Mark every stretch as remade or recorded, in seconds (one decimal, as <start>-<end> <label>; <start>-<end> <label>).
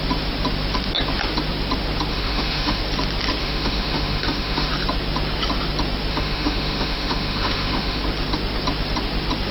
0.0-2.1 recorded; 2.1-2.8 remade; 2.8-3.4 recorded; 3.4-4.7 remade; 4.7-6.1 recorded; 6.1-8.0 remade; 8.0-9.5 recorded